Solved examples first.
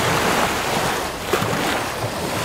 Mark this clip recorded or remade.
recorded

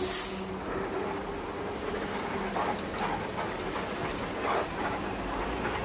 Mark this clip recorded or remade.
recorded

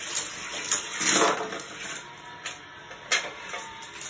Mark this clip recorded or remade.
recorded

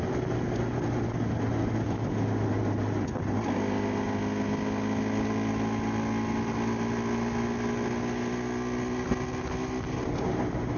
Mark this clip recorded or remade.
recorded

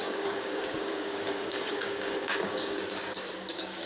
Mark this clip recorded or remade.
remade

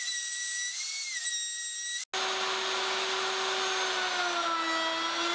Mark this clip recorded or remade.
recorded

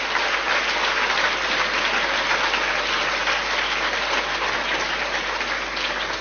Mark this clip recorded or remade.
recorded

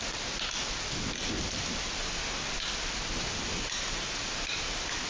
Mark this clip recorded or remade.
recorded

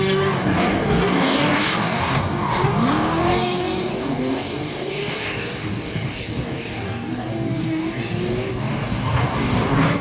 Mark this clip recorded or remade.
remade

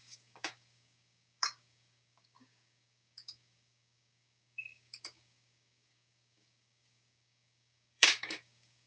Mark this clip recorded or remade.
remade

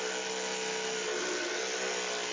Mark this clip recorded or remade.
recorded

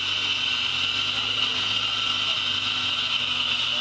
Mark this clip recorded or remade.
recorded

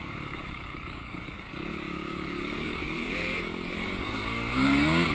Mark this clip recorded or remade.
remade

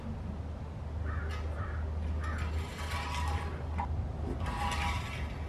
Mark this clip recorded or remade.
recorded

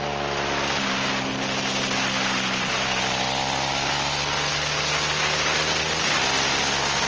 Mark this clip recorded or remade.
recorded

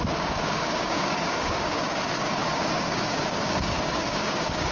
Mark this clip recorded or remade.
remade